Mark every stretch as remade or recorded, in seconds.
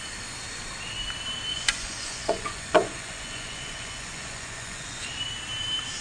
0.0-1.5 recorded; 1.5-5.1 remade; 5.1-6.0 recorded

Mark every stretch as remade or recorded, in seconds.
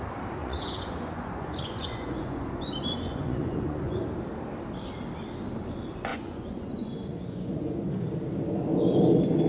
0.0-0.4 recorded; 0.4-4.0 remade; 4.0-6.1 recorded; 6.1-7.9 remade; 7.9-9.5 recorded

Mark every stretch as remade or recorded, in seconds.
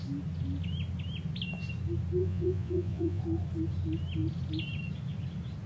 0.0-2.2 recorded; 2.2-3.2 remade; 3.2-5.7 recorded